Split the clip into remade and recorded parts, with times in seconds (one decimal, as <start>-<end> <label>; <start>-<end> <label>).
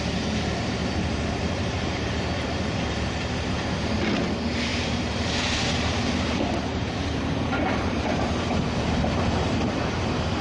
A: 0.0-0.8 recorded; 0.8-3.4 remade; 3.4-4.7 recorded; 4.7-8.9 remade; 8.9-10.4 recorded